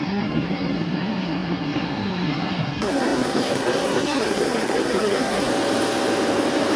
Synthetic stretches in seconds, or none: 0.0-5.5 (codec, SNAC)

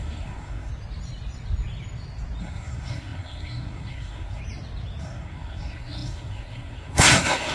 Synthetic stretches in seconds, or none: 0.0-0.7 (codec, SNAC); 2.4-4.4; 5.0-7.5